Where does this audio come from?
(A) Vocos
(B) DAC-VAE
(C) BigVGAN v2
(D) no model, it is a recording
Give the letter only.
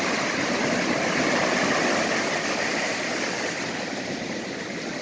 D